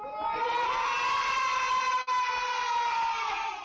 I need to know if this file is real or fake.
real